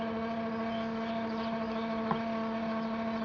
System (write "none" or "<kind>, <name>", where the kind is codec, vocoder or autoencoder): none